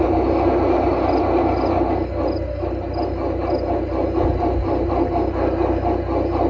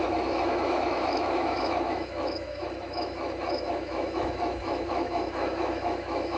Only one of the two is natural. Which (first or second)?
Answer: first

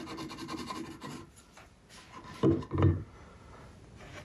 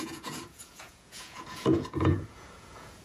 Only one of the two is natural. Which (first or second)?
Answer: first